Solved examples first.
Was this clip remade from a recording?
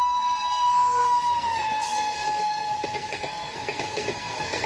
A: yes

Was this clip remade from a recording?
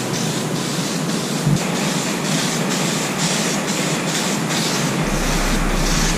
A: yes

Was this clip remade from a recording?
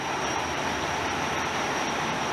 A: no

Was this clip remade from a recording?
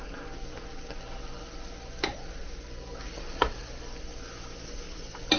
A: no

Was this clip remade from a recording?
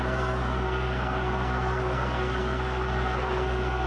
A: yes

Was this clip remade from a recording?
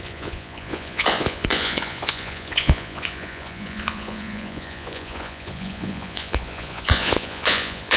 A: yes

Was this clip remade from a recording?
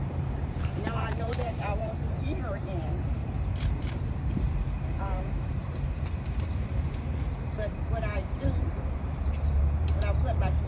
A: yes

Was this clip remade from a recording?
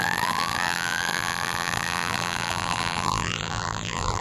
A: yes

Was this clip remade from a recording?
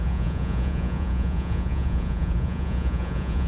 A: yes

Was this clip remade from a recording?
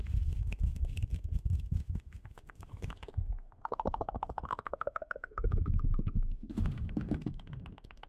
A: yes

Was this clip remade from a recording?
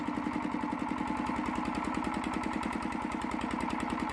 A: no